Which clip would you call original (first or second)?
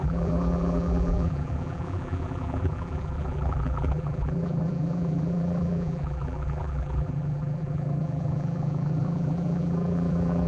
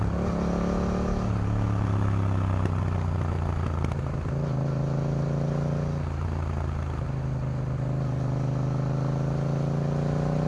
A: second